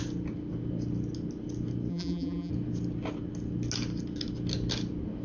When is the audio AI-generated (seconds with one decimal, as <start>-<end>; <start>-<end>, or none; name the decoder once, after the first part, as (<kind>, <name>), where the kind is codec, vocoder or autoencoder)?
1.9-2.5 (vocoder, BigVGAN v2)